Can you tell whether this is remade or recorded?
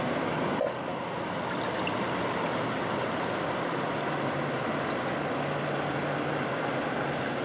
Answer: recorded